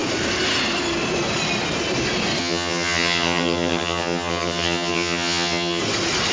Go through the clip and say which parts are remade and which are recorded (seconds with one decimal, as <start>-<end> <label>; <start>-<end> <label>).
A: 0.0-2.4 recorded; 2.4-5.8 remade; 5.8-6.3 recorded